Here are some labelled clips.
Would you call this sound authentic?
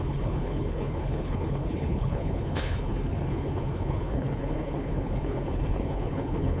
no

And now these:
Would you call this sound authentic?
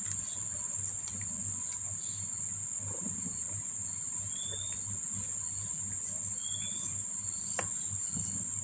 yes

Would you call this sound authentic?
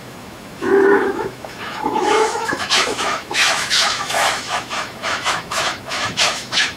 no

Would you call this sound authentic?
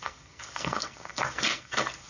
no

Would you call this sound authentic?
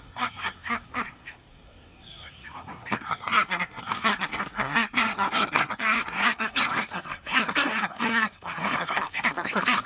no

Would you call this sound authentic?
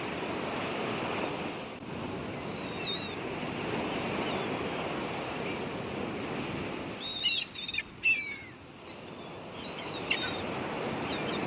yes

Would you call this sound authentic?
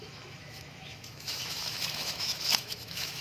no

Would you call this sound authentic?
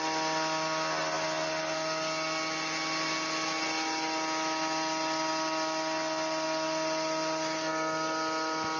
yes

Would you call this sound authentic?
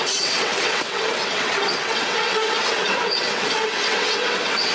no